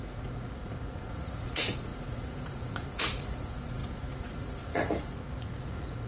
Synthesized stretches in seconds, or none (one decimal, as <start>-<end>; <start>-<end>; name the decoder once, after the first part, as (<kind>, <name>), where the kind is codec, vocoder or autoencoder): 0.0-6.1 (vocoder, Vocos)